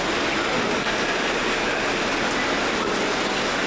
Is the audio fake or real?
real